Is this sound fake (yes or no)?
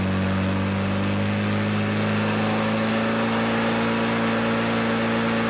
no